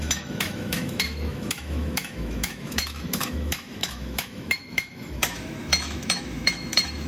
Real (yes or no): no